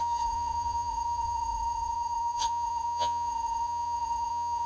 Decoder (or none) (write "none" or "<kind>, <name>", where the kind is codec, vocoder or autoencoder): vocoder, Vocos